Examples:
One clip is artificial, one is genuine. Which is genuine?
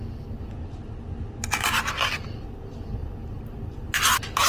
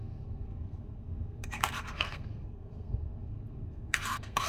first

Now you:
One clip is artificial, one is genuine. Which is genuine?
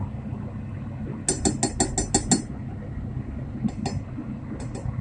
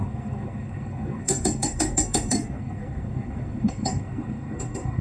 first